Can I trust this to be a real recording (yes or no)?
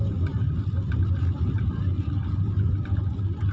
no